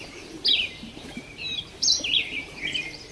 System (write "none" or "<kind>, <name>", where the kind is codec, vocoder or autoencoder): vocoder, BigVGAN v2